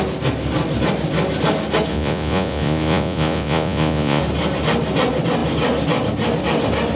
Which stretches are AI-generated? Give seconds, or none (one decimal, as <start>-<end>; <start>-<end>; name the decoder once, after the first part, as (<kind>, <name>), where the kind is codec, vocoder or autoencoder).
1.9-4.2 (vocoder, Vocos)